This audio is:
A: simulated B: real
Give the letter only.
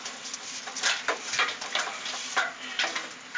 B